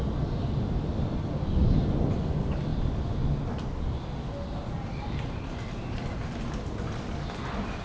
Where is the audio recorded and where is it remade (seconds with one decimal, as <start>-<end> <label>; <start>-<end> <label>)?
0.0-7.8 recorded